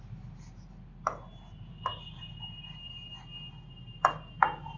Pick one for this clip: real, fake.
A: real